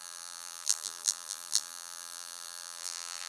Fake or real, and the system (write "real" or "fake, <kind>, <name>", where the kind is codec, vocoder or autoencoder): fake, vocoder, BigVGAN v2